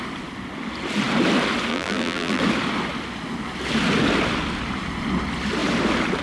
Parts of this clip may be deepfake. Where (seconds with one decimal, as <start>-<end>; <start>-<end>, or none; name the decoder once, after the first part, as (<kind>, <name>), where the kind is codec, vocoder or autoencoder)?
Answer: 1.7-2.4 (vocoder, BigVGAN v2)

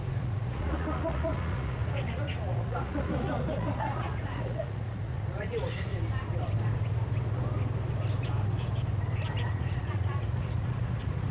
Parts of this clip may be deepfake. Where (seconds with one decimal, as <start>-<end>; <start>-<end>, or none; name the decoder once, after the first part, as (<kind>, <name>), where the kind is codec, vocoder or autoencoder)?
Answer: 0.0-5.9 (vocoder, Vocos); 9.5-11.3

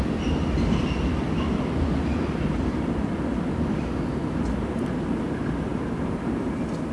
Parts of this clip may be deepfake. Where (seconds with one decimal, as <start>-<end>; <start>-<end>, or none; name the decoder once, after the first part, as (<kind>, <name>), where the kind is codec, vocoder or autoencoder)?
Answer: none

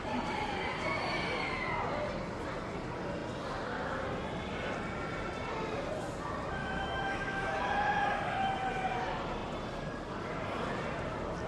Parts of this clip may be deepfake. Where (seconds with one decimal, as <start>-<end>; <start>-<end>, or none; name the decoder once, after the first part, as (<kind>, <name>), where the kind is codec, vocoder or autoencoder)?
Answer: 6.6-7.6 (autoencoder, DAC-VAE)

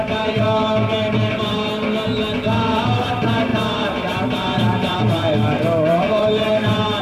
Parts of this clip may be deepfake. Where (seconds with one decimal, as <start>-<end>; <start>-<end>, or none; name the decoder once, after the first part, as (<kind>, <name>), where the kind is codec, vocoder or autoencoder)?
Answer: none